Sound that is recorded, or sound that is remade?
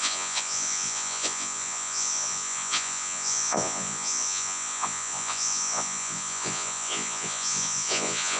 remade